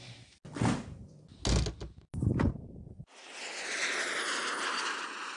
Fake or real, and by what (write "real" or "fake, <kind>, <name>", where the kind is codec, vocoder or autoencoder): real